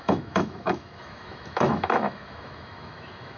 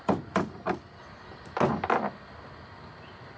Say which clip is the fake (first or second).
first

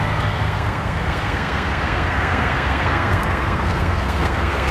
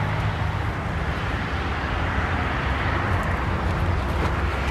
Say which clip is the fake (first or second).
first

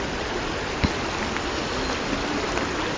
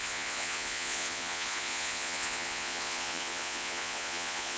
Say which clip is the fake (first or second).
second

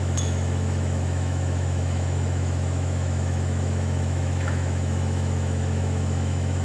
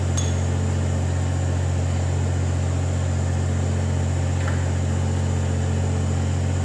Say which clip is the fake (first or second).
first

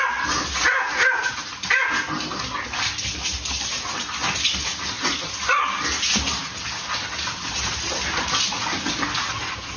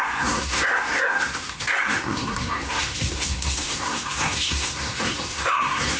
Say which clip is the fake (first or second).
second